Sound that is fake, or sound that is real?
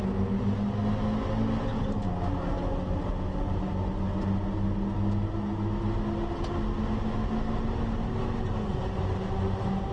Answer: real